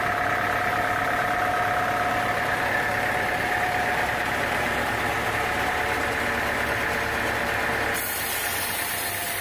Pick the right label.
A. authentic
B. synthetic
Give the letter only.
A